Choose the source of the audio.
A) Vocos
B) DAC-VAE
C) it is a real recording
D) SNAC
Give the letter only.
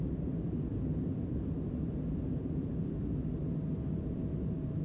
C